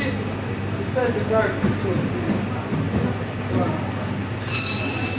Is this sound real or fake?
real